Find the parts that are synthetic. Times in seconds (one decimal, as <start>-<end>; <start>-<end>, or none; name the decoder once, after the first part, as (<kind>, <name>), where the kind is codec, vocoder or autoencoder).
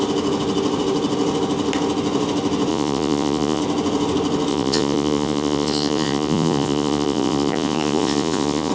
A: 2.7-3.6 (vocoder, Vocos); 4.5-8.7